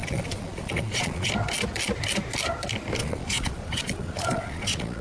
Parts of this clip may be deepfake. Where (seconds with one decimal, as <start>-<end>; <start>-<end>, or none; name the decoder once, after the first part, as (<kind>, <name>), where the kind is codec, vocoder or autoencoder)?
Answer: 0.0-1.3 (vocoder, Vocos); 3.0-5.0